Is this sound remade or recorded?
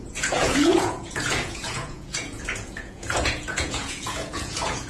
remade